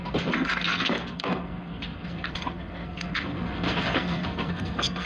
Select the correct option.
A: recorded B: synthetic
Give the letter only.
B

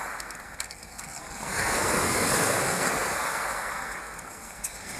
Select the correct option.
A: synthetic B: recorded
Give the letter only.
A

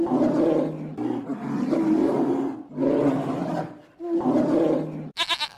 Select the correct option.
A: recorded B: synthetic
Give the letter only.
A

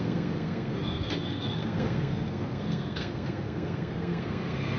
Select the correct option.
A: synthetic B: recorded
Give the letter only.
A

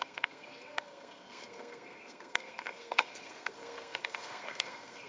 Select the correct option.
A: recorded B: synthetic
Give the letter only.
B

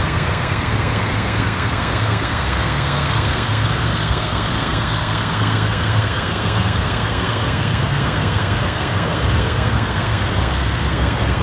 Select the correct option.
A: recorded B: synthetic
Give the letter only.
B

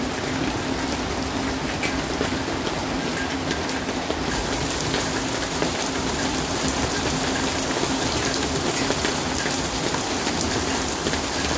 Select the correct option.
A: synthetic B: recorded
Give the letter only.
B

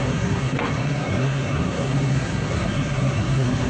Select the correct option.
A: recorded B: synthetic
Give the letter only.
B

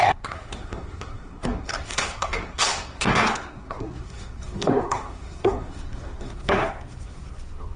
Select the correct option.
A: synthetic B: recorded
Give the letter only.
A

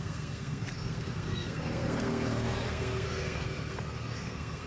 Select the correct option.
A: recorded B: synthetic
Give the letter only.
B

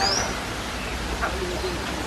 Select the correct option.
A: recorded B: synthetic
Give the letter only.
A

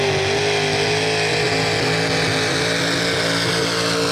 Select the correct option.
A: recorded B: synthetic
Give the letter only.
A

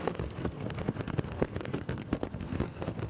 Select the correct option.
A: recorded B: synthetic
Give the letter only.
B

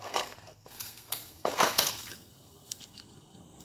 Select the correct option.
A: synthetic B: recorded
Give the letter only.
A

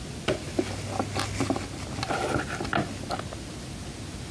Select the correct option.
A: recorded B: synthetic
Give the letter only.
A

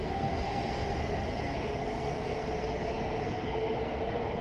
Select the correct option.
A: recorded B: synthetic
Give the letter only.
B